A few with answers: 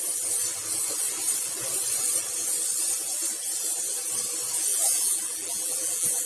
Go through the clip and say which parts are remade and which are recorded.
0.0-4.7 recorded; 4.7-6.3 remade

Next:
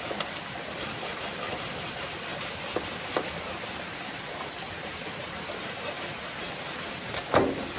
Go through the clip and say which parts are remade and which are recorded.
0.0-7.8 recorded

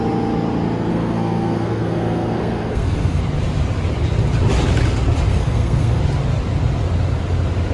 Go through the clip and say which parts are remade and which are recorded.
0.0-0.9 recorded; 0.9-3.2 remade; 3.2-5.3 recorded; 5.3-6.0 remade; 6.0-7.7 recorded

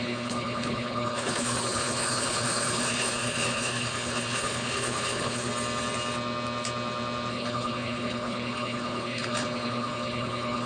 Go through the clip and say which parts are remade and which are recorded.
0.0-5.5 remade; 5.5-7.3 recorded; 7.3-10.7 remade